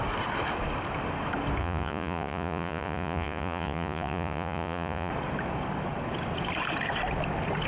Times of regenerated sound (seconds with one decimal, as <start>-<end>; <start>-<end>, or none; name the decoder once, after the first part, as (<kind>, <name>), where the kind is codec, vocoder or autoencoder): 1.6-5.1 (vocoder, Vocos)